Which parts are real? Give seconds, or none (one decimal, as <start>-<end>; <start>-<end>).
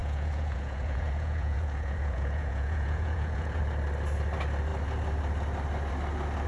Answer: 3.6-6.5